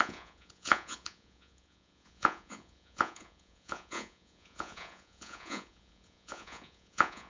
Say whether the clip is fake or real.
fake